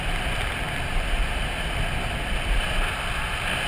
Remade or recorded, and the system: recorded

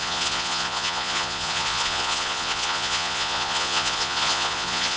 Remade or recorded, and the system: remade, vocoder, Vocos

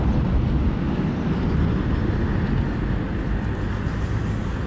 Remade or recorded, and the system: recorded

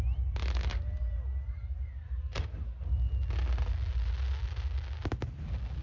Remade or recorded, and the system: recorded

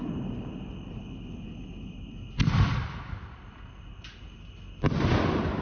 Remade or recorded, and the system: recorded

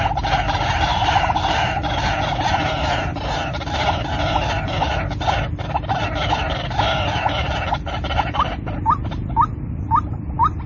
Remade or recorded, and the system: recorded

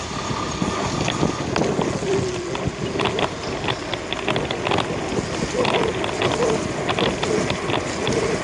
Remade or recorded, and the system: recorded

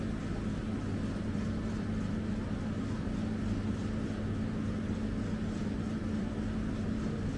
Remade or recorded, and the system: recorded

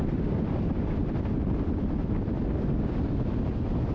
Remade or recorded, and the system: recorded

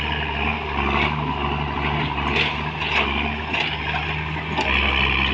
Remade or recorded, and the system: recorded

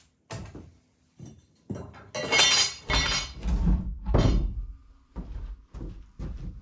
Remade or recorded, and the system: recorded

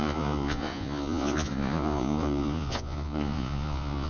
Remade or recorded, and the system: remade, vocoder, Vocos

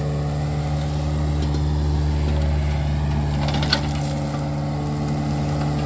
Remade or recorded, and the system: recorded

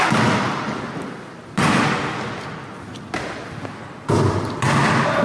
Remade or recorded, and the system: recorded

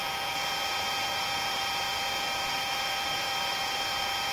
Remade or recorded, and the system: remade, vocoder, Vocos